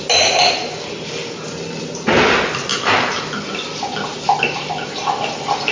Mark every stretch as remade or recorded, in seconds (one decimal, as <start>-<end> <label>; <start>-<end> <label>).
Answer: 0.0-5.7 recorded